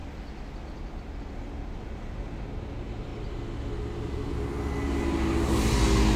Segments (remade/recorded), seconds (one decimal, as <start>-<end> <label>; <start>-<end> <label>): 0.0-6.2 recorded